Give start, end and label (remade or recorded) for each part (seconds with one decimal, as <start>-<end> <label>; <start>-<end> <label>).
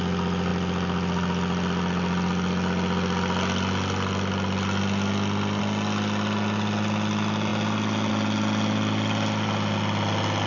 0.0-10.5 recorded